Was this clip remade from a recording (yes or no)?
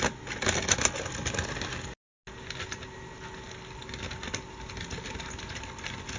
no